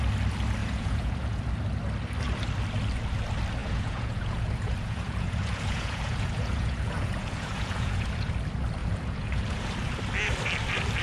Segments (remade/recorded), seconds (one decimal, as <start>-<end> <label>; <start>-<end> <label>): 0.0-0.6 recorded; 0.6-1.4 remade; 1.4-3.6 recorded; 3.6-8.3 remade; 8.3-8.8 recorded; 8.8-9.7 remade; 9.7-11.0 recorded